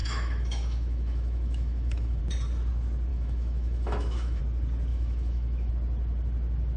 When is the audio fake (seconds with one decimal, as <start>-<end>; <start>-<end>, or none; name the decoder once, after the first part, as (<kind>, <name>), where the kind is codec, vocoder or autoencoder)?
0.0-2.2 (autoencoder, DAC-VAE); 3.1-4.4; 4.9-5.7

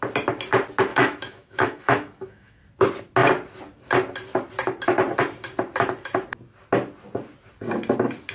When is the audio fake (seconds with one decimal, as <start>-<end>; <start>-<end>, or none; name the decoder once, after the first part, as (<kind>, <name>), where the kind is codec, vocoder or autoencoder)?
0.9-2.6 (autoencoder, DAC-VAE)